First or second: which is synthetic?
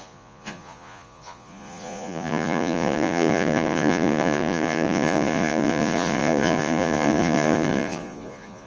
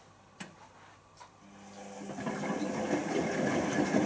first